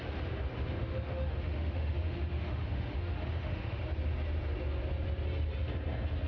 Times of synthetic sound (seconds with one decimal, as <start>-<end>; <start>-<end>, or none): 0.8-3.8